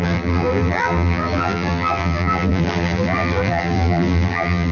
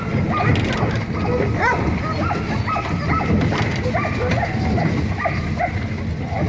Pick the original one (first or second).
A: second